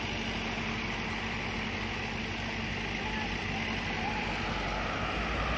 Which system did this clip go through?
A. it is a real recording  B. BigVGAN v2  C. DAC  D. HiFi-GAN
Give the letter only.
A